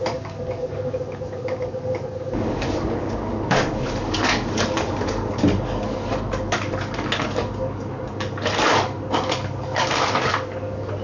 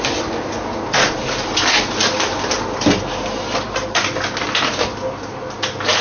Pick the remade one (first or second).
first